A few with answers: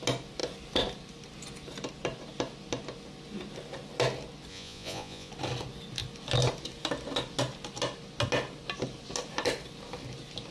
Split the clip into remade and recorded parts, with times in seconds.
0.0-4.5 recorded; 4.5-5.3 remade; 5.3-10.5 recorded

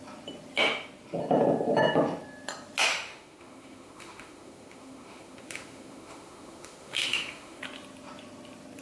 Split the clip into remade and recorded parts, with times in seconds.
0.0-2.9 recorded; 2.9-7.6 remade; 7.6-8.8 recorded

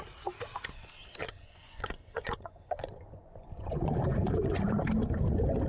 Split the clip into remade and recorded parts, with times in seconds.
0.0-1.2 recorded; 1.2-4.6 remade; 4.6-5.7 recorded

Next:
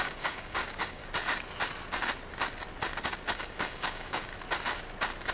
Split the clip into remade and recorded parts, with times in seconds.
0.0-1.0 remade; 1.0-3.3 recorded; 3.3-4.3 remade; 4.3-5.3 recorded